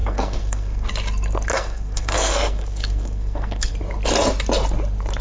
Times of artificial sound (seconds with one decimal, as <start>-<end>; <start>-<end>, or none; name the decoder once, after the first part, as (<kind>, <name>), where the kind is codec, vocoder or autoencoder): 0.0-0.9 (codec, SNAC); 1.5-3.7